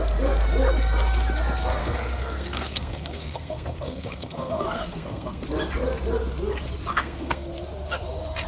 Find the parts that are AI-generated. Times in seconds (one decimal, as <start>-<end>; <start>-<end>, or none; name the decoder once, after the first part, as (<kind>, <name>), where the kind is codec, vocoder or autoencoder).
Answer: 1.8-5.4 (codec, SNAC); 6.9-7.5